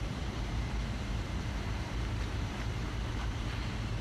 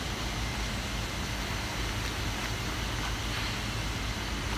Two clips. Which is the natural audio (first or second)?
second